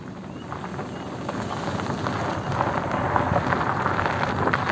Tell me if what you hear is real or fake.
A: real